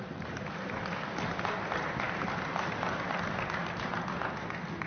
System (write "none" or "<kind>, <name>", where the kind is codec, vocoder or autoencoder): none